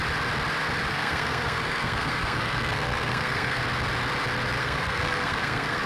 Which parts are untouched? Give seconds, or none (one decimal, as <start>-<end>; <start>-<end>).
0.0-0.9; 3.6-4.6